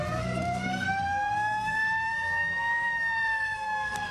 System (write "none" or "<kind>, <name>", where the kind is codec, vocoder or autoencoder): codec, SNAC